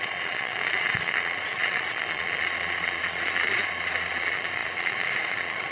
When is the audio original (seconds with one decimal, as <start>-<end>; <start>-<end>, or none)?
none